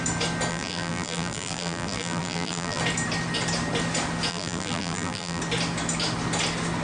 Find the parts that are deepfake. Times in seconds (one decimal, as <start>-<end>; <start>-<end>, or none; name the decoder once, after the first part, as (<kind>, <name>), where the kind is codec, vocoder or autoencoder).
0.5-2.8 (vocoder, BigVGAN v2); 4.3-5.4